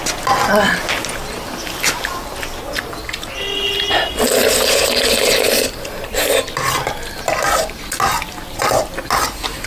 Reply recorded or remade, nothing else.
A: recorded